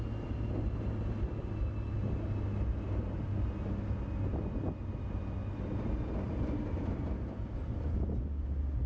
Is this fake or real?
real